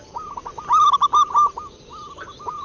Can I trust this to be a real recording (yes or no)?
yes